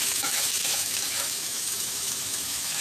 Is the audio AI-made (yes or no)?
yes